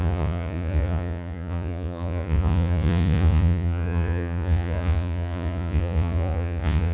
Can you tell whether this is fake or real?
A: fake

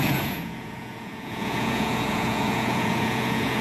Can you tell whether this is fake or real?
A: fake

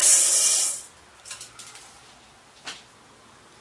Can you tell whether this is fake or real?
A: real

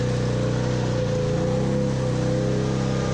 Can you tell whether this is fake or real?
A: real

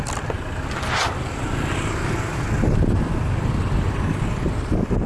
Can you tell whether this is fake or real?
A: real